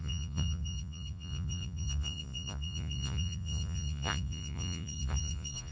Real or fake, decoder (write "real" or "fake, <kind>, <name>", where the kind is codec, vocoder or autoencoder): fake, vocoder, Vocos